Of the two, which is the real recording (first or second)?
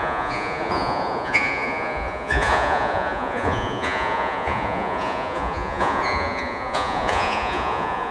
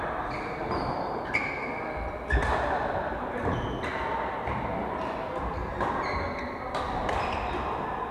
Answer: second